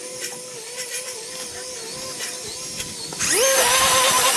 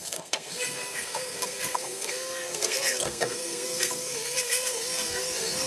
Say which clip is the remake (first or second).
second